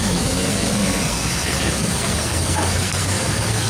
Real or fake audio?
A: fake